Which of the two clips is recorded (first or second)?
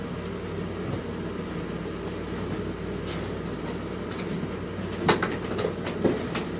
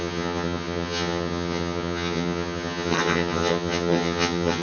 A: first